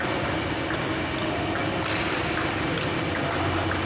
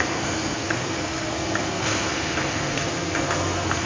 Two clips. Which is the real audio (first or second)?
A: first